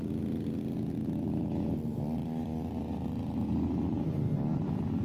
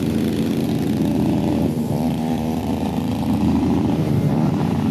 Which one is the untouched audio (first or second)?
first